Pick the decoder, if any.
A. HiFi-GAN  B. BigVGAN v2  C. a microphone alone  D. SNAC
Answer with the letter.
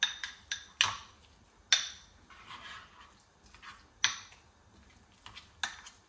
C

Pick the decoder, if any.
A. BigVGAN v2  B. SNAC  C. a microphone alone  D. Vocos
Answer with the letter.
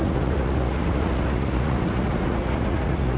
D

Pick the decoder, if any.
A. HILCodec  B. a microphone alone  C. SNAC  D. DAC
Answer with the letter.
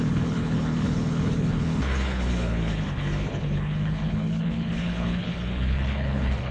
A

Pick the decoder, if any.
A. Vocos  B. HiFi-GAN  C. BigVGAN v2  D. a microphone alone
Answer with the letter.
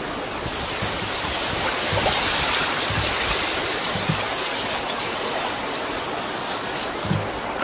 D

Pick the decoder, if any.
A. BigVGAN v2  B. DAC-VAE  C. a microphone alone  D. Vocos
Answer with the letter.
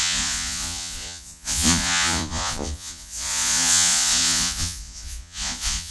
D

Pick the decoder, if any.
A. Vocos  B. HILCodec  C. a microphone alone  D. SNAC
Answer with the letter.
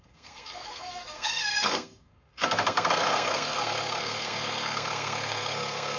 D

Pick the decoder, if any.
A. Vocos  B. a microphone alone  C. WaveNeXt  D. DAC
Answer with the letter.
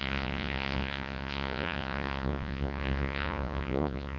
A